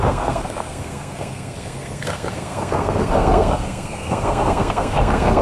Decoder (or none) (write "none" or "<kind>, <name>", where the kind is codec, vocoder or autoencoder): codec, SNAC